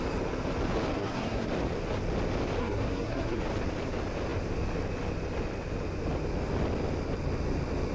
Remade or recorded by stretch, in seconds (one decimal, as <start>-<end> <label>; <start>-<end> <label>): 0.0-0.9 recorded; 0.9-1.5 remade; 1.5-2.6 recorded; 2.6-3.4 remade; 3.4-7.9 recorded